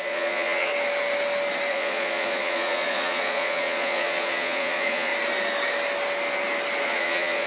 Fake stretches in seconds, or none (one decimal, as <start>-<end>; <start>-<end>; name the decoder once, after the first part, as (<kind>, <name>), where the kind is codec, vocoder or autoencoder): 0.0-0.7 (vocoder, Vocos); 1.7-5.1; 6.8-7.5